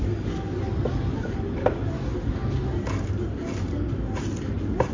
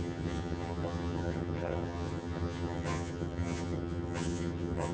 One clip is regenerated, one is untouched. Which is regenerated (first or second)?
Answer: second